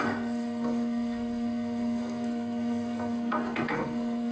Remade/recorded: remade